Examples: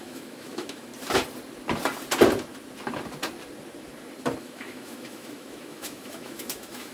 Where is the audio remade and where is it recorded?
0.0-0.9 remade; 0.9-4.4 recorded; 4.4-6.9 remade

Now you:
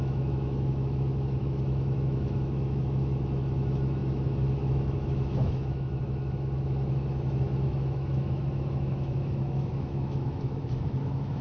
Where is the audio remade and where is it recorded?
0.0-11.4 remade

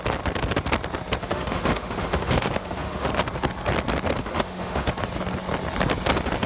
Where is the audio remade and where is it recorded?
0.0-1.2 recorded; 1.2-3.1 remade; 3.1-4.2 recorded; 4.2-4.9 remade; 4.9-6.5 recorded

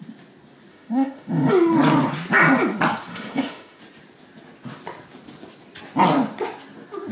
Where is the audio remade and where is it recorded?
0.0-0.7 recorded; 0.7-1.5 remade; 1.5-3.1 recorded; 3.1-3.8 remade; 3.8-7.1 recorded

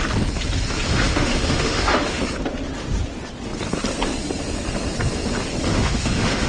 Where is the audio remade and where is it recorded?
0.0-0.9 recorded; 0.9-2.2 remade; 2.2-5.7 recorded; 5.7-6.5 remade

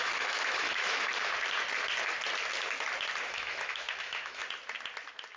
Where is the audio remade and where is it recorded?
0.0-1.1 remade; 1.1-3.3 recorded; 3.3-4.4 remade; 4.4-5.4 recorded

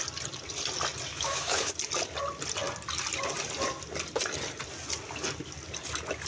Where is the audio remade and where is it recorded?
0.0-1.1 recorded; 1.1-1.7 remade; 1.7-6.3 recorded

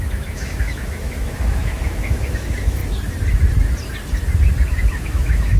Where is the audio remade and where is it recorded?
0.0-2.8 remade; 2.8-4.9 recorded; 4.9-5.6 remade